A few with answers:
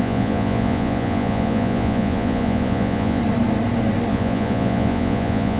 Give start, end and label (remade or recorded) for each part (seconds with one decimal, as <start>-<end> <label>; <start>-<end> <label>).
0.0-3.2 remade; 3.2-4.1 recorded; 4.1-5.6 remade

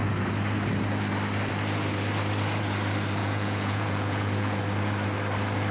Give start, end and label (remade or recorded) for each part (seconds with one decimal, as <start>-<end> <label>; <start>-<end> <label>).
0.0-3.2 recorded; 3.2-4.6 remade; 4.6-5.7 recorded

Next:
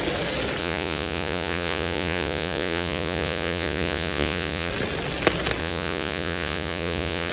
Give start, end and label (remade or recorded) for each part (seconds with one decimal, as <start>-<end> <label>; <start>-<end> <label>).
0.0-0.6 recorded; 0.6-4.7 remade; 4.7-5.6 recorded; 5.6-7.3 remade

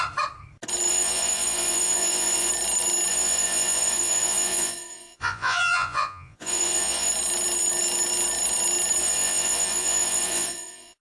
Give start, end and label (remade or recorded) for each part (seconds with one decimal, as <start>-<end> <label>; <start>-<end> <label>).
0.0-0.9 recorded; 0.9-2.5 remade; 2.5-3.1 recorded; 3.1-7.1 remade; 7.1-9.0 recorded; 9.0-11.0 remade

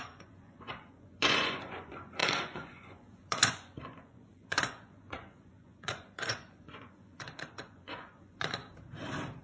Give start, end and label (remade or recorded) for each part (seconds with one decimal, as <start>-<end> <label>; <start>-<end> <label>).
0.0-8.6 remade; 8.6-9.4 recorded